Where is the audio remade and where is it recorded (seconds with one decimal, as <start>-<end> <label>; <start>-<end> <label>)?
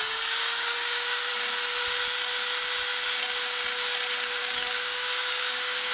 0.0-1.3 remade; 1.3-4.4 recorded; 4.4-5.9 remade